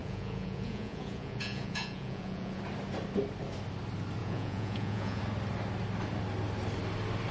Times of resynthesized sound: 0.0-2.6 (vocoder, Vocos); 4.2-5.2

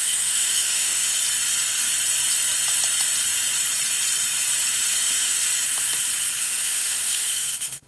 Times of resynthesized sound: 0.0-1.2 (autoencoder, DAC-VAE); 4.7-5.5; 6.4-7.9

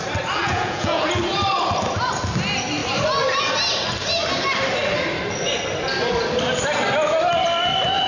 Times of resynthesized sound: 0.4-1.0 (vocoder, Vocos)

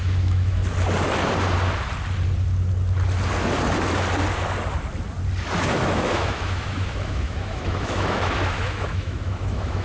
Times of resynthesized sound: 0.0-0.6 (autoencoder, DAC-VAE); 5.7-9.8

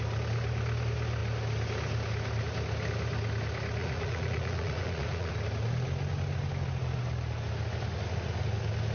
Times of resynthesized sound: 3.8-5.3 (vocoder, Vocos)

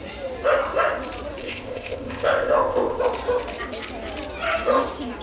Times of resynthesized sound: 1.4-3.0 (codec, ZipCodec)

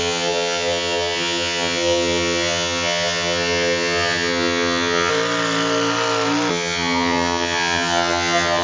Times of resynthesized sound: 0.0-5.1 (vocoder, HiFi-GAN); 6.5-8.6

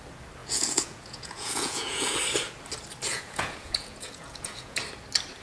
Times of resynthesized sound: 0.4-2.2 (vocoder, Vocos); 3.1-4.8